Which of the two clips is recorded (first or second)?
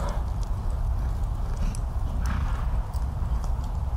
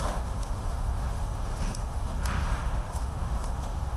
first